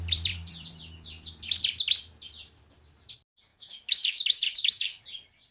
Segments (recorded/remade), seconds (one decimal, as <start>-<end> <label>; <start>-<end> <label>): 0.0-3.5 recorded; 3.5-5.0 remade; 5.0-5.5 recorded